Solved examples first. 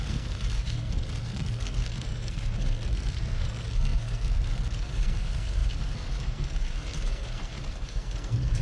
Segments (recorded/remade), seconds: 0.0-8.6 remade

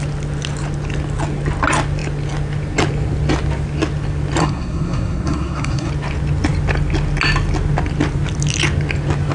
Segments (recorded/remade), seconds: 0.0-4.4 recorded; 4.4-5.9 remade; 5.9-9.3 recorded

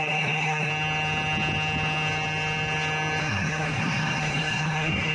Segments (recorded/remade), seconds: 0.0-0.7 remade; 0.7-3.2 recorded; 3.2-5.1 remade

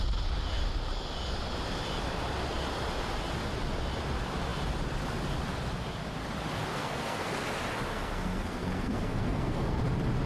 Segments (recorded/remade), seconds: 0.0-6.7 recorded; 6.7-7.3 remade; 7.3-7.9 recorded; 7.9-9.8 remade; 9.8-10.3 recorded

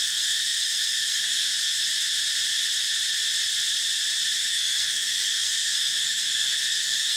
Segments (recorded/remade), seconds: 0.0-1.5 remade; 1.5-4.4 recorded; 4.4-7.2 remade

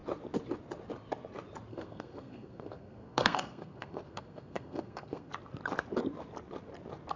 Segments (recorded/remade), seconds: 0.0-1.7 recorded; 1.7-5.3 remade; 5.3-7.2 recorded

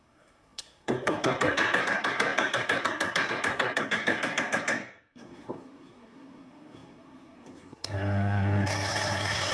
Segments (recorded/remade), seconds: 0.0-9.5 remade